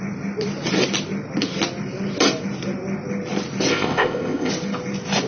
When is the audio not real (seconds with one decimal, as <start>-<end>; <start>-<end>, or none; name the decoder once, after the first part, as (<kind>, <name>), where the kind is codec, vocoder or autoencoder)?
3.7-4.5 (codec, ZipCodec)